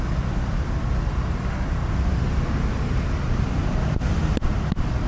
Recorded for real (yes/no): yes